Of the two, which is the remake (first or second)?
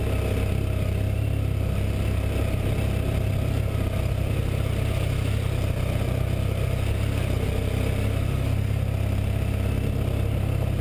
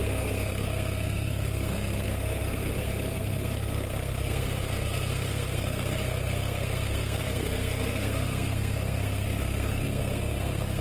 second